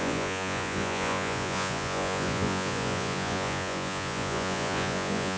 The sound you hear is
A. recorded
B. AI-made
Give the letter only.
B